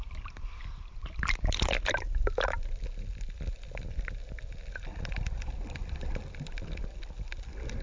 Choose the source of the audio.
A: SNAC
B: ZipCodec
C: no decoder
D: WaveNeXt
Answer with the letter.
C